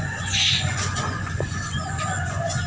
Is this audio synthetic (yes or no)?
yes